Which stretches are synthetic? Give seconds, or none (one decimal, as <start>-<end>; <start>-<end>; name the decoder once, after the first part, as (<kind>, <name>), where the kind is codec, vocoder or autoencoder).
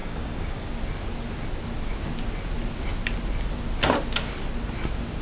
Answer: 0.0-0.7 (codec, DAC)